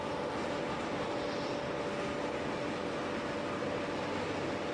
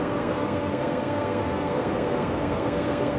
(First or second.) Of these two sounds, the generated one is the second